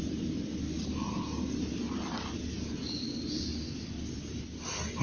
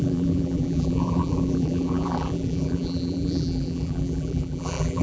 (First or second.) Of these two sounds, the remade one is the second